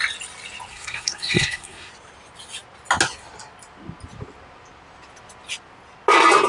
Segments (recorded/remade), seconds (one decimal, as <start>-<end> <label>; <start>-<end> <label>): 0.0-0.7 recorded; 0.7-1.9 remade; 1.9-6.5 recorded